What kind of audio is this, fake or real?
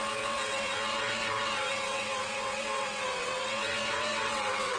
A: fake